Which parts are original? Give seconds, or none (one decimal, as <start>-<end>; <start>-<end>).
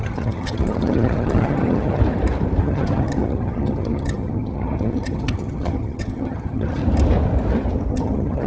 2.0-2.6; 6.8-7.9